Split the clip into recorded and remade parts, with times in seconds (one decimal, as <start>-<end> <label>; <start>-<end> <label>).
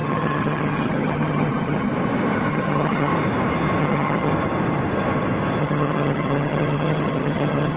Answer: 0.0-1.9 remade; 1.9-2.5 recorded; 2.5-3.1 remade; 3.1-3.8 recorded; 3.8-4.3 remade; 4.3-5.6 recorded; 5.6-7.8 remade